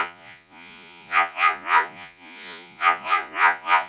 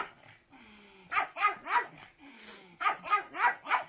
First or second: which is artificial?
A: first